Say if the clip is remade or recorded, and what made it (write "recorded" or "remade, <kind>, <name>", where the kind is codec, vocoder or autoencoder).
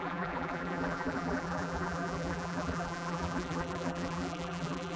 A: remade, vocoder, BigVGAN v2